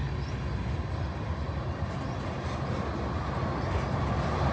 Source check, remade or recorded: recorded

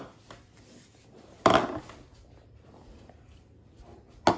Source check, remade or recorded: recorded